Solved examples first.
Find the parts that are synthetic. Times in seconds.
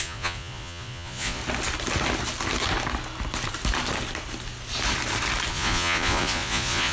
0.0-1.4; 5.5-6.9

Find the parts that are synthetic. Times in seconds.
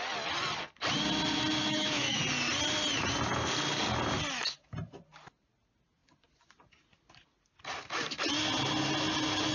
1.6-2.2